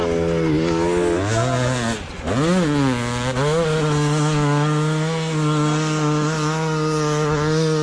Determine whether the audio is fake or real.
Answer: real